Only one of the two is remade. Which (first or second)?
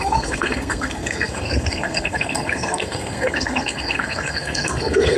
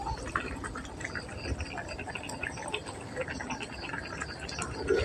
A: first